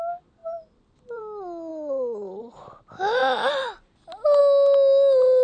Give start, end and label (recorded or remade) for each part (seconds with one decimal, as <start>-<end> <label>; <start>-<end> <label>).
0.0-0.4 recorded; 0.4-1.2 remade; 1.2-5.4 recorded